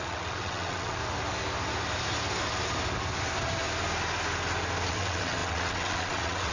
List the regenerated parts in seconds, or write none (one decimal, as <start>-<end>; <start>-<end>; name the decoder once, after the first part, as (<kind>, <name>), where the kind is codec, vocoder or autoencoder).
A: 0.0-1.0 (vocoder, WaveNeXt); 4.9-6.5